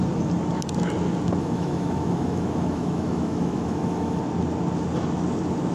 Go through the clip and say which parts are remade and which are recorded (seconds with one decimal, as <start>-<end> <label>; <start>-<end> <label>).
0.0-1.4 recorded; 1.4-4.2 remade; 4.2-5.7 recorded